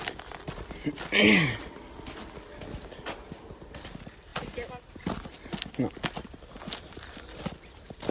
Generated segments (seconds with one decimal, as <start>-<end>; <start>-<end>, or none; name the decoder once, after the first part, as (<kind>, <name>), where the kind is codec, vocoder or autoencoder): none